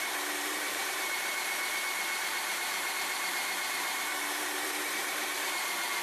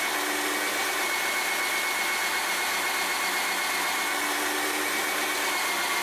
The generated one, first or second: first